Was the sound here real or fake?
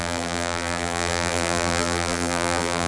fake